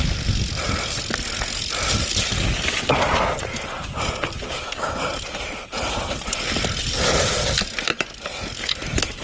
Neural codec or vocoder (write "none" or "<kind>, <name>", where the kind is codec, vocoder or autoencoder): none